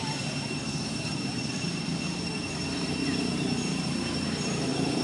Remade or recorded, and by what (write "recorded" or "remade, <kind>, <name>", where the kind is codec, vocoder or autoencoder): remade, vocoder, BigVGAN v2